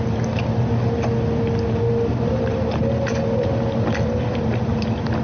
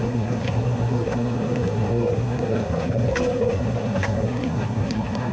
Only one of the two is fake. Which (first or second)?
second